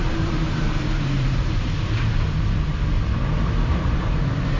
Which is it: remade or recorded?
remade